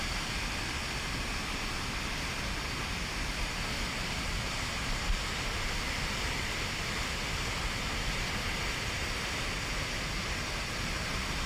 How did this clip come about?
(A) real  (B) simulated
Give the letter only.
A